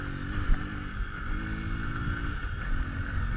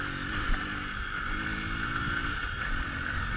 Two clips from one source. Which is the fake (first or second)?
second